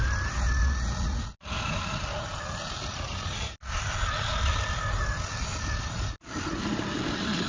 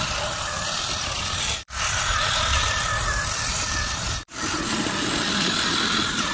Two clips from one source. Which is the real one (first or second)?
first